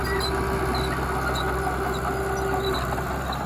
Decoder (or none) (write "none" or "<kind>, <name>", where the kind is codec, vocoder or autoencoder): none